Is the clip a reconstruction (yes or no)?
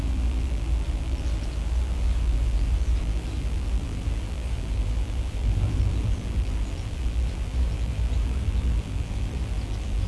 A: yes